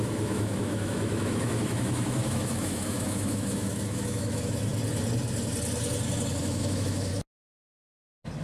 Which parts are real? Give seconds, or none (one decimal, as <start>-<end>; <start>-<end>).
4.7-6.4; 7.1-8.4